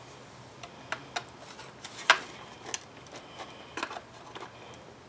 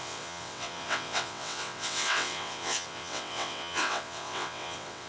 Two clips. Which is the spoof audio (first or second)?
second